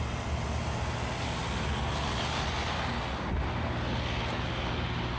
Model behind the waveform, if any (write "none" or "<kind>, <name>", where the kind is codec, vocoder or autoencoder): none